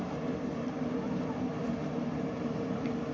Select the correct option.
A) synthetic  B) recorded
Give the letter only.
A